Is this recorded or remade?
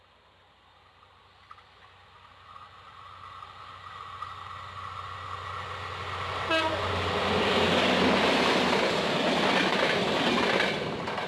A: recorded